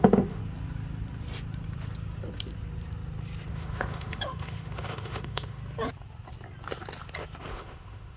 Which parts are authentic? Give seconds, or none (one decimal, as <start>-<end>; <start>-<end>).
0.4-3.5; 5.6-7.5